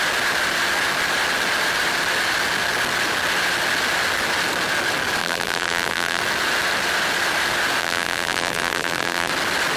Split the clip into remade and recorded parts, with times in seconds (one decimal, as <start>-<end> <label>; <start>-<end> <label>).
0.0-5.2 recorded; 5.2-6.2 remade; 6.2-7.8 recorded; 7.8-9.3 remade; 9.3-9.8 recorded